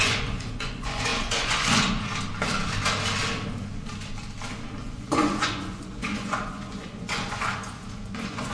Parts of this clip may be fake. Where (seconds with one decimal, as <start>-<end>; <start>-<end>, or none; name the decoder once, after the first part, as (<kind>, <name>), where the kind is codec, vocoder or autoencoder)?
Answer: 0.0-2.1 (vocoder, Vocos); 4.8-8.5